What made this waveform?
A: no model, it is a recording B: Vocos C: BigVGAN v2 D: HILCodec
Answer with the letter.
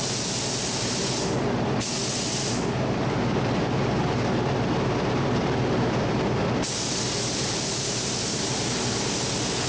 A